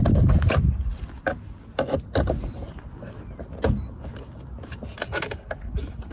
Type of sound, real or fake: real